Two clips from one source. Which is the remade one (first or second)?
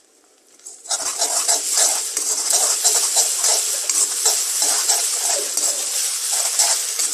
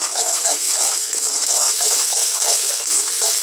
second